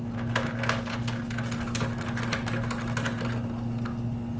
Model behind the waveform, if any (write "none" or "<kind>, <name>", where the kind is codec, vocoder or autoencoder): none